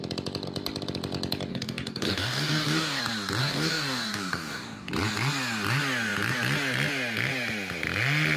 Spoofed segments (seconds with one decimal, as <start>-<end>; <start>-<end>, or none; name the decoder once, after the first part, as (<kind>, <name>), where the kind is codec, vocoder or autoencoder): 1.5-3.0 (codec, DAC); 3.4-4.9